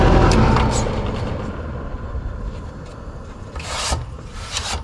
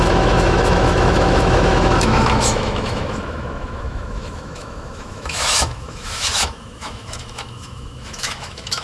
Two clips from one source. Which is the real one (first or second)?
first